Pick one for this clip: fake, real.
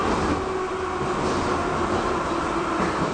real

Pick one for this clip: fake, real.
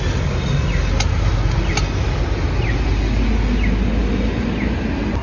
real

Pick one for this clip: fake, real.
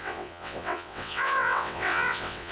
fake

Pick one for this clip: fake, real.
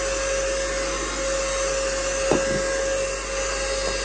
real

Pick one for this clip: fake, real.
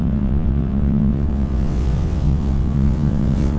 fake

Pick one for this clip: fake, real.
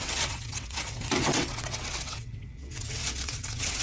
fake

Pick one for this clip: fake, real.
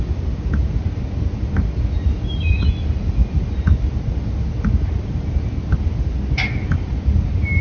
real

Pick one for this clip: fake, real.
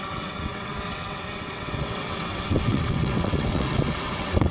fake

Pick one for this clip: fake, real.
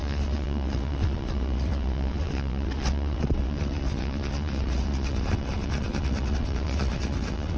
fake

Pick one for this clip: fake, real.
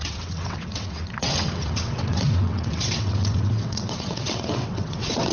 fake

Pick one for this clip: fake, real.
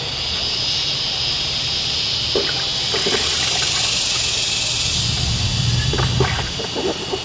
real